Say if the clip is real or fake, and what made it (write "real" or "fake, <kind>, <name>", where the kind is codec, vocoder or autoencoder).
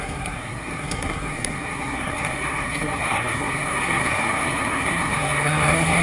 fake, codec, SNAC